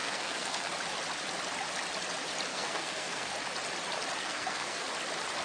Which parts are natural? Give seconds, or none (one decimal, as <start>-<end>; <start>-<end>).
0.7-2.5; 3.3-4.2; 4.9-5.4

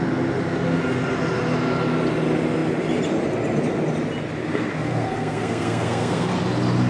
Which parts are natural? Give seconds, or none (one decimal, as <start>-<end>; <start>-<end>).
0.0-4.4; 6.3-6.9

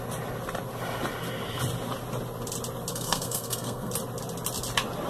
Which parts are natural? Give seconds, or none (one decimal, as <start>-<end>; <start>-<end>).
0.0-2.9; 3.9-5.1

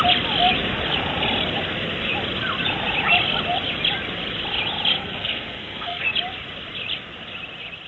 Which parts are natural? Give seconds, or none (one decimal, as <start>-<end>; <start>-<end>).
0.0-4.9; 6.0-7.9

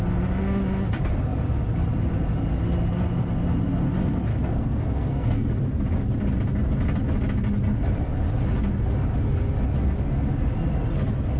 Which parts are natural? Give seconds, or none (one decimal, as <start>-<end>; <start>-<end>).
0.0-4.3; 5.5-11.4

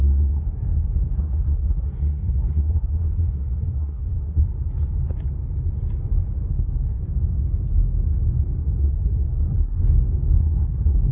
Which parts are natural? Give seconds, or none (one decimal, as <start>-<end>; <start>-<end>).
4.4-6.5; 7.0-8.8; 9.8-10.4

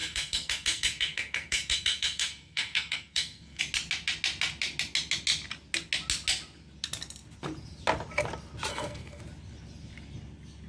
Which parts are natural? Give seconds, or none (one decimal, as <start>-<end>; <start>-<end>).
3.6-8.7; 9.2-10.7

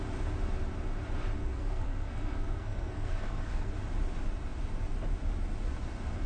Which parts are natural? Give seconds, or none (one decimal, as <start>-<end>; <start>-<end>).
0.0-1.4; 3.7-6.3